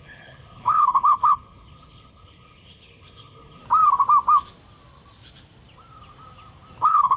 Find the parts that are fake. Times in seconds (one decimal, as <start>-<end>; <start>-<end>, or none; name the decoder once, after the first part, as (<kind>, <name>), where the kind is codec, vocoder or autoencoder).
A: 0.0-3.6 (codec, HILCodec); 6.8-7.2